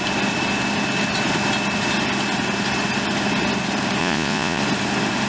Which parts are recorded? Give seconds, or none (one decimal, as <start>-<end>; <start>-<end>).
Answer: 0.0-4.0; 4.6-5.3